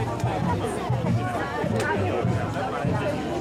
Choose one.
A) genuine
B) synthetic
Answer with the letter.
A